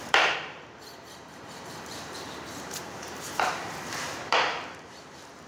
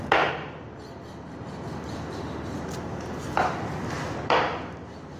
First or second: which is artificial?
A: first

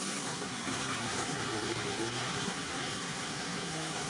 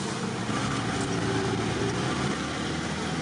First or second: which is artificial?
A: first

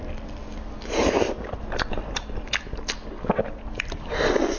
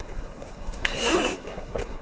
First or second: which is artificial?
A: second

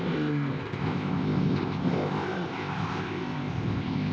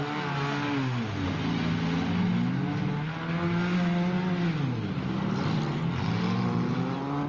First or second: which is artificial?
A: first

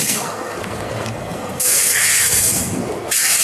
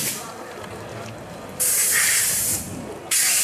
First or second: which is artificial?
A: first